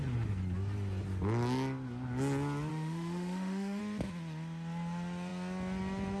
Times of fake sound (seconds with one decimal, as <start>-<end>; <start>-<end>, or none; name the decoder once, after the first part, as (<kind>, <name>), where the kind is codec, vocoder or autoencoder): 2.7-3.8 (autoencoder, DAC-VAE)